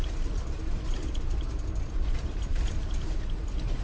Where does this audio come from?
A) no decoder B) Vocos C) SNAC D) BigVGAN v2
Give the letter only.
A